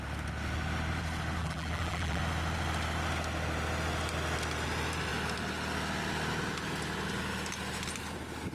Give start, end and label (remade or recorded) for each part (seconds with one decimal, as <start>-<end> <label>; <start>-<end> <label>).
0.0-1.4 recorded; 1.4-2.2 remade; 2.2-8.5 recorded